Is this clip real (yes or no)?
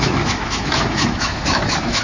no